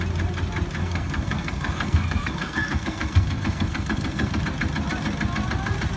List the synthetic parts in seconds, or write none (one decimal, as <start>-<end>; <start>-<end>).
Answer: 0.8-4.4